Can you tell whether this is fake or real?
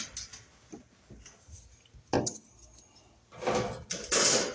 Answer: real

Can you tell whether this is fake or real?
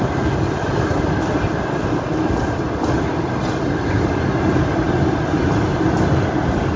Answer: real